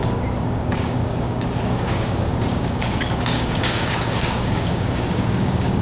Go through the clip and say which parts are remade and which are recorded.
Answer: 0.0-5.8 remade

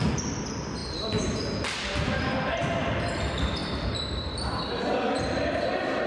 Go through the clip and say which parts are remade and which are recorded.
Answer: 0.0-0.8 remade; 0.8-1.6 recorded; 1.6-6.1 remade

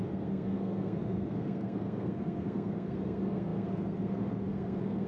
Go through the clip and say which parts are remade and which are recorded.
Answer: 0.0-5.1 remade

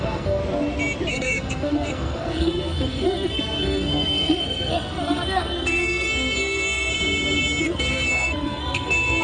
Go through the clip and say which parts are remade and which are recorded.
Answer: 0.0-0.4 remade; 0.4-1.1 recorded; 1.1-6.9 remade; 6.9-7.6 recorded; 7.6-9.2 remade

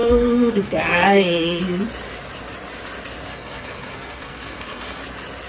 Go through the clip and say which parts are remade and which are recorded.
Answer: 0.0-1.6 remade; 1.6-3.3 recorded; 3.3-5.0 remade; 5.0-5.5 recorded

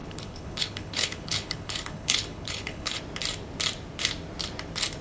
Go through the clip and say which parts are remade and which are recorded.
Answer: 0.0-3.0 remade; 3.0-5.0 recorded

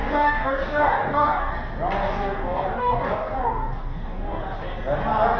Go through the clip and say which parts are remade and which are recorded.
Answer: 0.0-1.5 remade; 1.5-2.0 recorded; 2.0-4.4 remade; 4.4-5.4 recorded